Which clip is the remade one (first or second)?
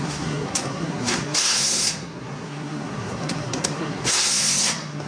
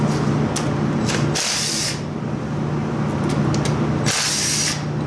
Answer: first